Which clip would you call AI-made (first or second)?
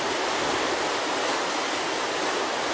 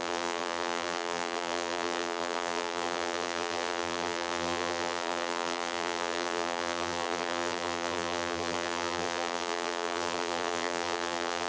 second